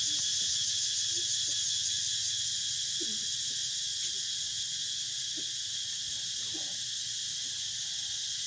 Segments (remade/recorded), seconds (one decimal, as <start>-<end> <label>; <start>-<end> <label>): 0.0-3.6 recorded; 3.6-4.1 remade; 4.1-4.5 recorded; 4.5-5.7 remade; 5.7-8.5 recorded